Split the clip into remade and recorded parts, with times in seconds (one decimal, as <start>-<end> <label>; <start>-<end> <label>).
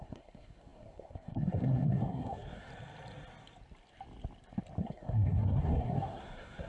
0.0-2.7 remade; 2.7-4.8 recorded; 4.8-6.7 remade